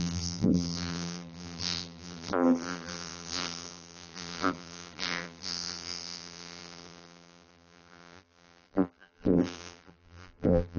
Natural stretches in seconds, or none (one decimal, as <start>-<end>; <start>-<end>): none